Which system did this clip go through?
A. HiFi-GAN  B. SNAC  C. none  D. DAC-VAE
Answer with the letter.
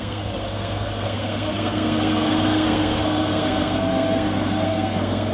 B